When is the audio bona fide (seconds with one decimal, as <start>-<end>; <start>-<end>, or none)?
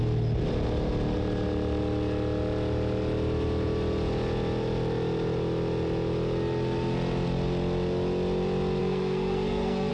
0.0-8.8